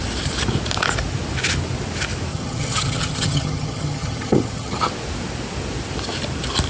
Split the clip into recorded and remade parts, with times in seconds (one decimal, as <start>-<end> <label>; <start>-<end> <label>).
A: 0.0-2.3 recorded; 2.3-4.9 remade; 4.9-6.7 recorded